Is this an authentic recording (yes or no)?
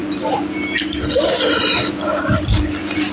yes